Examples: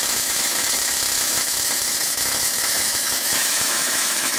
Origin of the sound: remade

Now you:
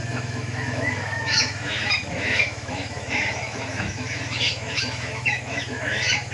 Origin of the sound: remade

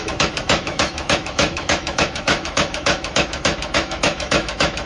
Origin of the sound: remade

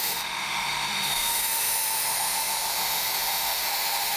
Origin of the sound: remade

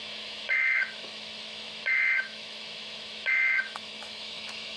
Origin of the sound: remade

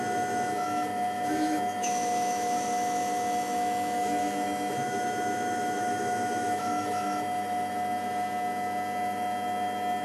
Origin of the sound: remade